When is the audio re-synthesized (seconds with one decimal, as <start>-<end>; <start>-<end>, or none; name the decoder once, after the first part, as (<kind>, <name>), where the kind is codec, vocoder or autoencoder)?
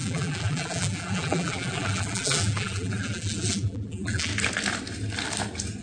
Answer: 0.0-4.3 (vocoder, BigVGAN v2)